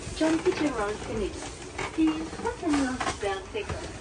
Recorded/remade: recorded